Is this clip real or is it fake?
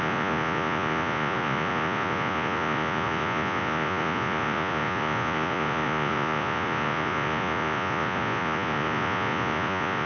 fake